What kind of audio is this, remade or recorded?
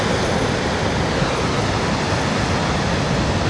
recorded